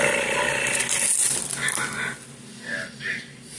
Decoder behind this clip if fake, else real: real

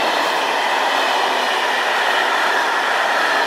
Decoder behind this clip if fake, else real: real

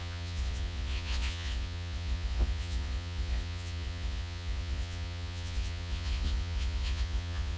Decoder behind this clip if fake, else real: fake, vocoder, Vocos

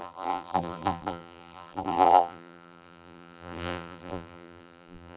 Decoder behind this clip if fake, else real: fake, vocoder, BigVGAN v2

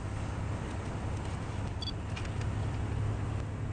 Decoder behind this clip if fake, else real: real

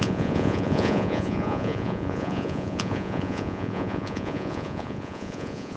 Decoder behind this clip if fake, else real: fake, vocoder, Vocos